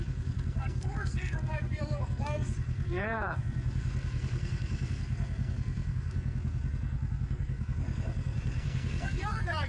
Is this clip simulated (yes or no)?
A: yes